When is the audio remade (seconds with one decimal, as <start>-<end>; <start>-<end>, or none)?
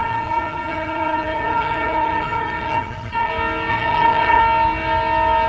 0.0-3.3; 3.7-4.4